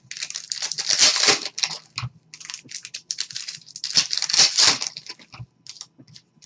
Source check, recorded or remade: recorded